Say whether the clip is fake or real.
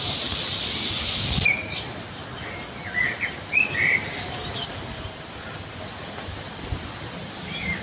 real